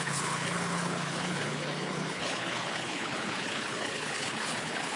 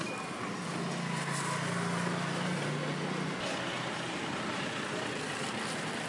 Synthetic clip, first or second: first